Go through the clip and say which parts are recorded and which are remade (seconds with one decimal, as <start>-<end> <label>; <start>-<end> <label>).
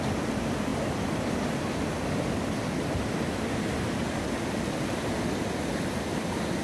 0.0-6.6 recorded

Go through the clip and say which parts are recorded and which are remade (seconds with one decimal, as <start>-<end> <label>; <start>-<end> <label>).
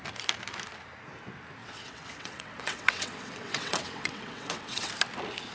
0.0-1.6 recorded; 1.6-4.9 remade; 4.9-5.5 recorded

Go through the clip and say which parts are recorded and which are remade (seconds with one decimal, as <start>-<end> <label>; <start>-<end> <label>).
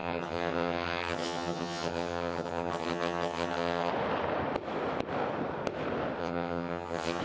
0.0-3.9 remade; 3.9-6.2 recorded; 6.2-7.2 remade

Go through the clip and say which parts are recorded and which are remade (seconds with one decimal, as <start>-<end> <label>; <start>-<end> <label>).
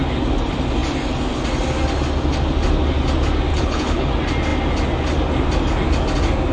0.0-3.5 recorded; 3.5-4.1 remade; 4.1-6.5 recorded